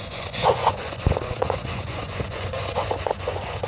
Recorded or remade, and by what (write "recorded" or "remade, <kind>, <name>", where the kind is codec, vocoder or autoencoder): remade, vocoder, Vocos